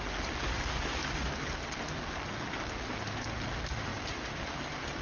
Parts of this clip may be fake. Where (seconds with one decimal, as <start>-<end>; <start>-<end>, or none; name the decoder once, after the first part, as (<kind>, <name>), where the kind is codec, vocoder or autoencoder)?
none